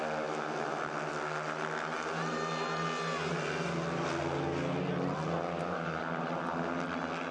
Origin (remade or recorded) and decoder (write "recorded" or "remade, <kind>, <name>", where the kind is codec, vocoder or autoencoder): recorded